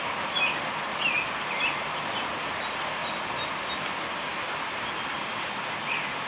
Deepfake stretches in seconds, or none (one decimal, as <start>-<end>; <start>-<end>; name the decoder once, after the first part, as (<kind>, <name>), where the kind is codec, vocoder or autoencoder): none